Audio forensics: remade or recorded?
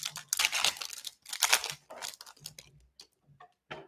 recorded